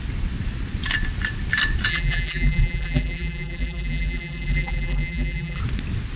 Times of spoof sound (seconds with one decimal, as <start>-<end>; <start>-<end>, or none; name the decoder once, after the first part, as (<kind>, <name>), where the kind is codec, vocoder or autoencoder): 1.9-5.6 (vocoder, BigVGAN v2)